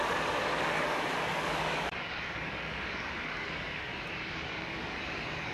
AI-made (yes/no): yes